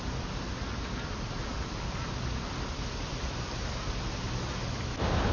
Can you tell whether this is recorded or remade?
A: recorded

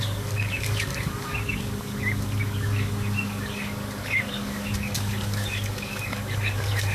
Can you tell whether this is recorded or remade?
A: remade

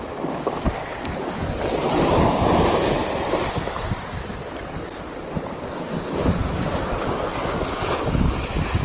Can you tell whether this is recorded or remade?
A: recorded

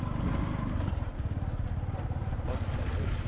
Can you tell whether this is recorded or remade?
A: recorded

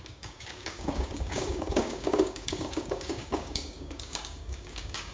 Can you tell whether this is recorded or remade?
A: remade